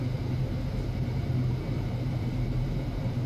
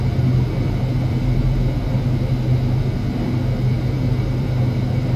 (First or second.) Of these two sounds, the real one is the second